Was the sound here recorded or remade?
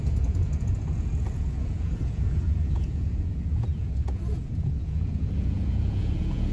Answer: remade